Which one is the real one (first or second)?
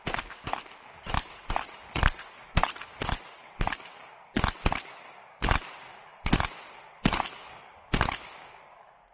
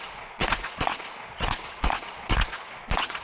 first